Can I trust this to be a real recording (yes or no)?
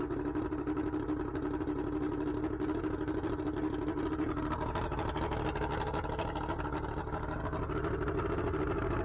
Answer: yes